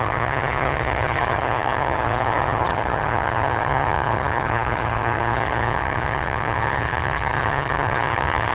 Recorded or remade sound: remade